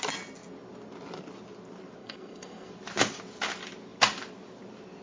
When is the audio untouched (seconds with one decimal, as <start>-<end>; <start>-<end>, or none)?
0.0-2.0; 2.7-5.0